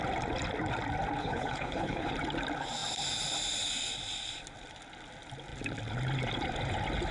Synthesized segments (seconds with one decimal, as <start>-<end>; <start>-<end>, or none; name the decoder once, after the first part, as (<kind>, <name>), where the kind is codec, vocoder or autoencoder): 1.2-2.1 (codec, HILCodec)